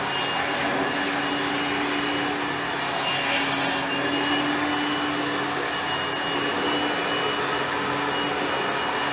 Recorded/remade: recorded